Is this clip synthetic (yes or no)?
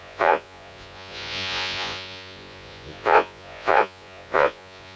yes